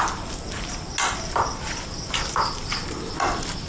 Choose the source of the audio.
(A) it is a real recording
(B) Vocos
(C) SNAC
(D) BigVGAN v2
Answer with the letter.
A